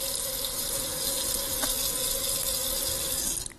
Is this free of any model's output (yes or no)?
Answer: yes